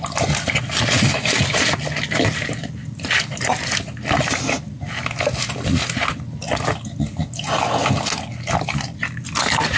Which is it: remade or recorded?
recorded